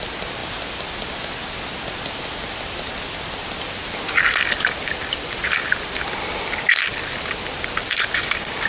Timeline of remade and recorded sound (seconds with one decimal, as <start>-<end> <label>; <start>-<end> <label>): 0.0-8.7 recorded